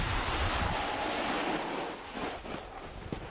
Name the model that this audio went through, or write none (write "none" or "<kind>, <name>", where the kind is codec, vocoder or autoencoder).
none